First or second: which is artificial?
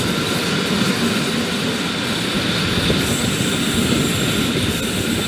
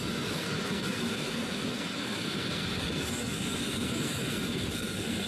second